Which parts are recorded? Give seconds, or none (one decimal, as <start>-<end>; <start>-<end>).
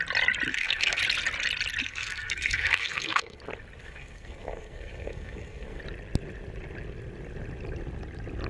0.0-0.5; 1.0-1.8; 3.4-3.8; 5.8-8.5